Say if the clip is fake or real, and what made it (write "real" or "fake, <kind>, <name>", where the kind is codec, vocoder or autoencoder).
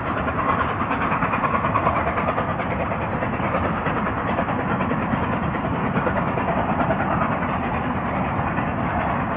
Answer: real